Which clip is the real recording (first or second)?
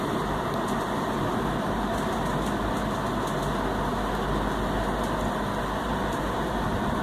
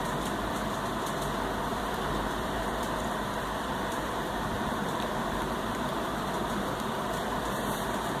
first